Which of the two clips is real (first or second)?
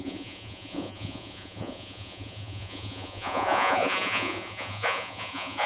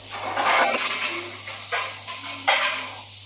second